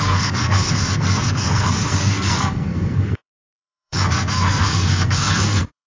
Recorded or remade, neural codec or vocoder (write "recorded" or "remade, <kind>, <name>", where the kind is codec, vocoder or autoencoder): remade, codec, SNAC